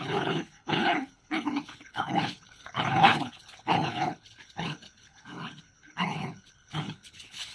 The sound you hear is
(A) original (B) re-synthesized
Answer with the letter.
B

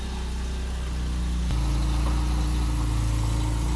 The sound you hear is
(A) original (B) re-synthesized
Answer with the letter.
A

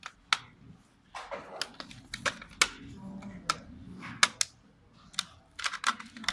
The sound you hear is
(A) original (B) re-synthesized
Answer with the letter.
A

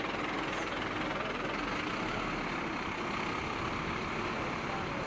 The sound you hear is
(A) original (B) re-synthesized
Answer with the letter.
A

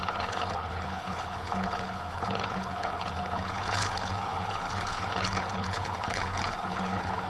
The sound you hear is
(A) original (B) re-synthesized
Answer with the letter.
B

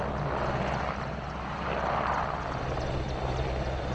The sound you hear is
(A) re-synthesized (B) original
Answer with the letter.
B